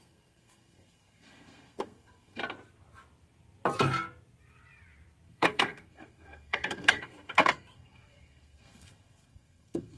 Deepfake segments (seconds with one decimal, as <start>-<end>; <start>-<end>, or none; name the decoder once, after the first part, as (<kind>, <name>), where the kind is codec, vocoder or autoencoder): 0.0-2.4 (codec, SNAC); 5.3-10.0